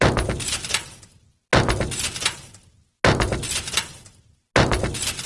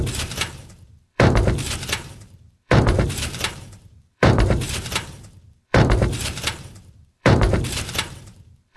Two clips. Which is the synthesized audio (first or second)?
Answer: second